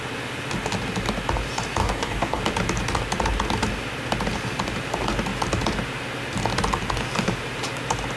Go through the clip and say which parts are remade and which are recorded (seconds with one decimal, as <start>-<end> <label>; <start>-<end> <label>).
0.0-1.8 recorded; 1.8-2.4 remade; 2.4-8.2 recorded